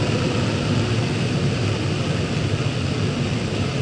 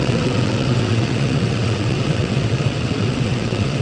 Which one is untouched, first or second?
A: first